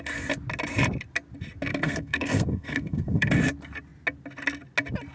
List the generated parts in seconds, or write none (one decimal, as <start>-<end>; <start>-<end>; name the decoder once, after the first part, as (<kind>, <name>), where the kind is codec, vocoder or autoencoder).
1.7-3.3 (codec, SNAC)